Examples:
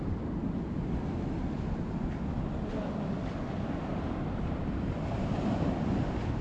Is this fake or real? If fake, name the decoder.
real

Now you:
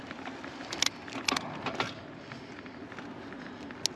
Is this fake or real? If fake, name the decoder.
real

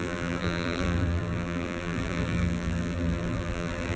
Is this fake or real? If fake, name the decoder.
fake, vocoder, BigVGAN v2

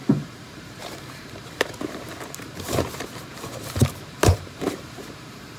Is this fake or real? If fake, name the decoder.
fake, vocoder, BigVGAN v2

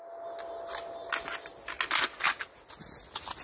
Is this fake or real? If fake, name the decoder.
real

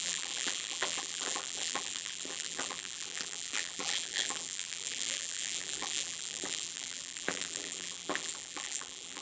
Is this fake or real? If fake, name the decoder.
fake, vocoder, BigVGAN v2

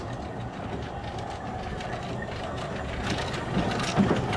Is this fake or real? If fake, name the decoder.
real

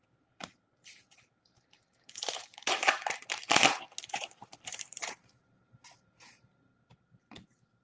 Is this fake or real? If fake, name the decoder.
fake, vocoder, BigVGAN v2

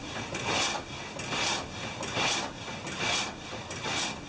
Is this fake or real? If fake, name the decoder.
real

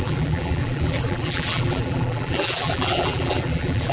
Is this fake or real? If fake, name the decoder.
fake, vocoder, BigVGAN v2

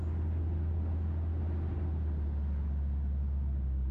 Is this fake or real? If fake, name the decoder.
real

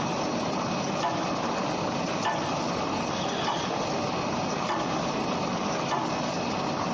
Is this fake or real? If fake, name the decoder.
real